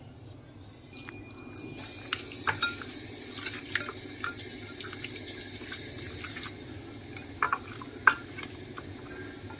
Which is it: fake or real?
real